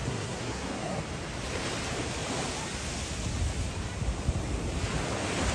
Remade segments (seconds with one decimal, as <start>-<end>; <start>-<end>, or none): 0.0-1.0

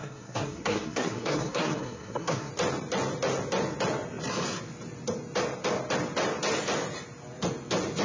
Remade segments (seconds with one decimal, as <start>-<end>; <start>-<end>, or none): 0.0-2.5